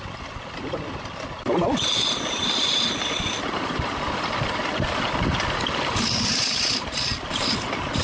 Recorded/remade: recorded